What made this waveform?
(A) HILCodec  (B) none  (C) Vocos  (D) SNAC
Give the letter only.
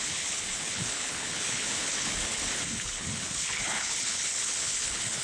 A